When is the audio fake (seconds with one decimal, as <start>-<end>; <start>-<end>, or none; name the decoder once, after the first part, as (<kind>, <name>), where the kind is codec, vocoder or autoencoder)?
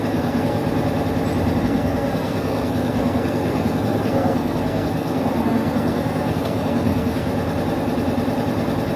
0.0-0.6 (codec, SNAC); 1.6-7.3